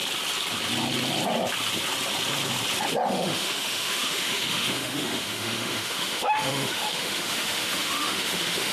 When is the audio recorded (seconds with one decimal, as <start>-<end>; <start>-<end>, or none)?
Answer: 0.0-3.1

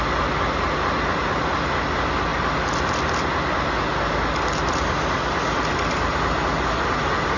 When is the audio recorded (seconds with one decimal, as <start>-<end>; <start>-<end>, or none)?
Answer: 0.0-7.4

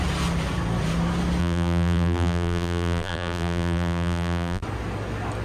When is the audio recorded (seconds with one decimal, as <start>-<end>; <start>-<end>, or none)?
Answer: 0.0-1.4; 4.6-5.4

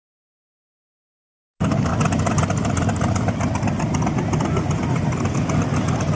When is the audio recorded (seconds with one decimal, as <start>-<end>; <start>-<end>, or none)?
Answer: 0.0-6.2